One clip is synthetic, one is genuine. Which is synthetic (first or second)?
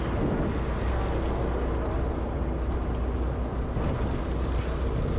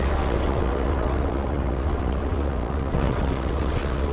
second